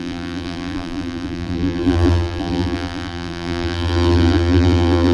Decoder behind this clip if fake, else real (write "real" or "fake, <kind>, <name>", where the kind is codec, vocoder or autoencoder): fake, vocoder, BigVGAN v2